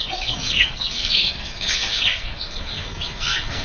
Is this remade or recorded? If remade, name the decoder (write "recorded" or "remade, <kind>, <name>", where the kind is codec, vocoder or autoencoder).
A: remade, codec, SNAC